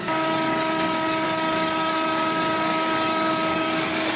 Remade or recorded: remade